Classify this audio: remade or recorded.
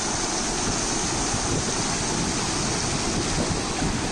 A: recorded